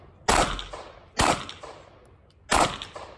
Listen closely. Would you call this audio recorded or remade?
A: recorded